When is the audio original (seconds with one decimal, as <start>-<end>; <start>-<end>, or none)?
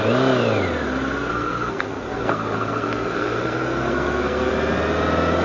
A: 0.0-1.3; 4.5-5.4